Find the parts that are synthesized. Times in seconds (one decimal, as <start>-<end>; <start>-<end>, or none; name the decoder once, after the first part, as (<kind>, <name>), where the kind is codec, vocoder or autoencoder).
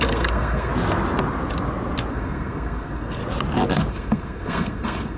0.0-0.7 (codec, SNAC); 2.1-3.2; 3.9-5.2